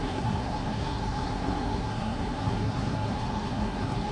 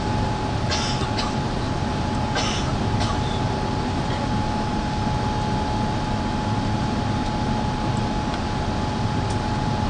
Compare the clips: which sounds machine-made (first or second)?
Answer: first